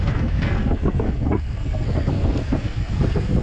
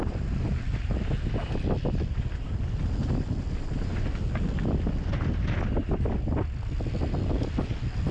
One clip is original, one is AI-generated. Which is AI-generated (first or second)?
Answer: first